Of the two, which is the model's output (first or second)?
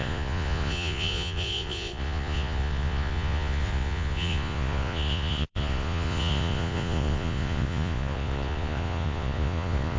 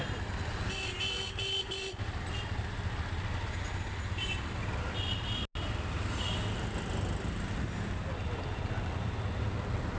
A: first